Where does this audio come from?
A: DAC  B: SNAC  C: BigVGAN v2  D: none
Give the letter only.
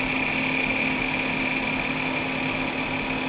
D